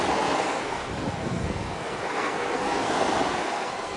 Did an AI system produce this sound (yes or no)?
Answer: yes